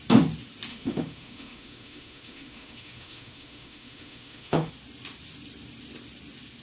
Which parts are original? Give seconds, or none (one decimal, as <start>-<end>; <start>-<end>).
0.0-0.7; 4.7-6.6

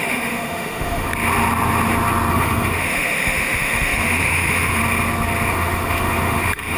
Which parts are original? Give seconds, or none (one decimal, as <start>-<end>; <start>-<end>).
1.1-2.3; 4.8-5.5

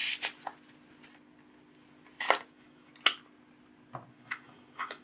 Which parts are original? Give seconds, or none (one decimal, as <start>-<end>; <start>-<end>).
0.0-2.5; 2.9-4.1